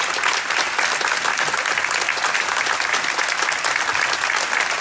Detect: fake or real real